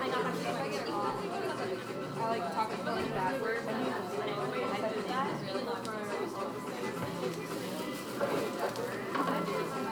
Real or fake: real